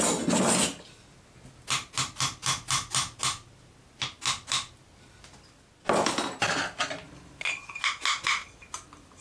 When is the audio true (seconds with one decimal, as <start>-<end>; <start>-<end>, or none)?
0.0-9.2